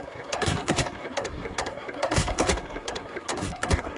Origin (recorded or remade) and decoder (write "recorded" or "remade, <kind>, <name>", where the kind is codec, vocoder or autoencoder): remade, codec, SNAC